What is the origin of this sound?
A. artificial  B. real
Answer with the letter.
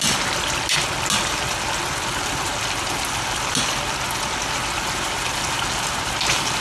B